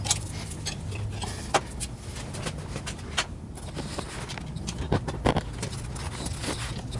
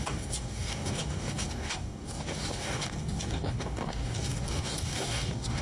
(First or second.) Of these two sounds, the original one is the first